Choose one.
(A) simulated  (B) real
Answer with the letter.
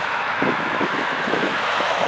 A